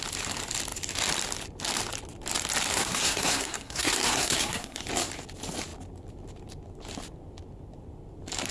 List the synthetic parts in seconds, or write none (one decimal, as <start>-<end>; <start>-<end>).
2.7-4.8